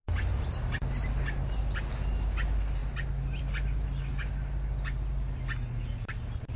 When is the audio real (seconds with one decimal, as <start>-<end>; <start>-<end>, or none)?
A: 0.0-6.6